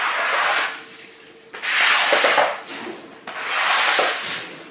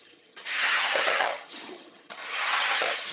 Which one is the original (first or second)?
first